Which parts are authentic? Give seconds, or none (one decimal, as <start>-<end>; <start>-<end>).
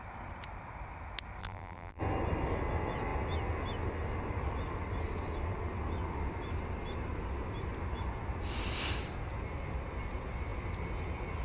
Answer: 0.0-1.4; 2.0-11.4